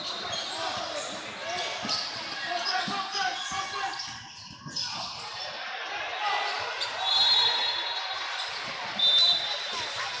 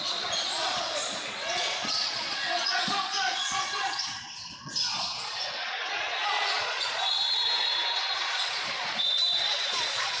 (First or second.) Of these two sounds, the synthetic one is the second